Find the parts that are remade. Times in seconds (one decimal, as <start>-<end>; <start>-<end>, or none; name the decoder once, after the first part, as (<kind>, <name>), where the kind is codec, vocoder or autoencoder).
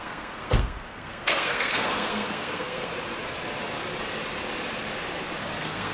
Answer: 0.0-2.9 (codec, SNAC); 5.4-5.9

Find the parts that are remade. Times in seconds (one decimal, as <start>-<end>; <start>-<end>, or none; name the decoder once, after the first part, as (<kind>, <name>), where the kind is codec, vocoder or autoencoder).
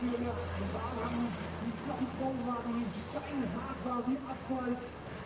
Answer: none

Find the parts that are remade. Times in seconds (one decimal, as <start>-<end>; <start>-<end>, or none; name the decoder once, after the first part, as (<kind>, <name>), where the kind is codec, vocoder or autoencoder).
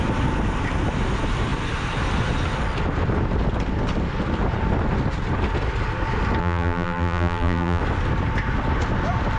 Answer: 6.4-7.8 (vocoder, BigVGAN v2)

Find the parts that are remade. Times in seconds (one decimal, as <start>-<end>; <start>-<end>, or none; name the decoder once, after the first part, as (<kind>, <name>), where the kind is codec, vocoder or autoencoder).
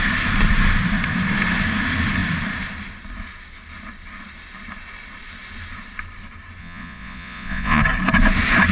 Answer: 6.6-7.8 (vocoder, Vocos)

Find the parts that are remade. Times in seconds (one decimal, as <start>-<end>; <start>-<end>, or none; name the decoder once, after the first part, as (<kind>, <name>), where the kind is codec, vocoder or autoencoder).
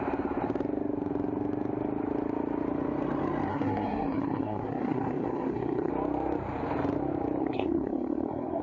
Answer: 3.5-5.9 (codec, SNAC); 7.4-8.6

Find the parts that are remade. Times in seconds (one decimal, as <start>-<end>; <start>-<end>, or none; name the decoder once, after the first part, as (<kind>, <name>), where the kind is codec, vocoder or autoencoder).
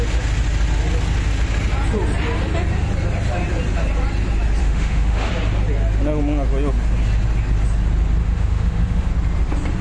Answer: 4.6-5.3 (autoencoder, DAC-VAE); 8.2-9.1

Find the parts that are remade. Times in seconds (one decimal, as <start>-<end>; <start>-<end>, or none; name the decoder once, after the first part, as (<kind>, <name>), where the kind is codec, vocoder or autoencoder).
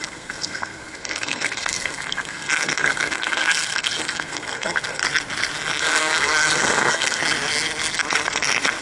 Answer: 0.0-5.0 (codec, SNAC); 5.8-7.2